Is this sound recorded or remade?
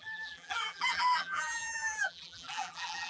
remade